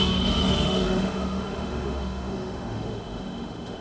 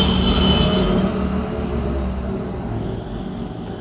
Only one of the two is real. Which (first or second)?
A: second